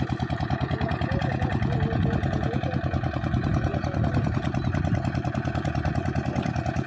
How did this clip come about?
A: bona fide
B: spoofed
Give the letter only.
A